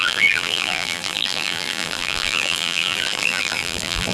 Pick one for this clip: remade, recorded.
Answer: remade